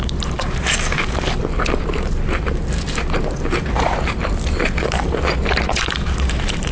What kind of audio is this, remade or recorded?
remade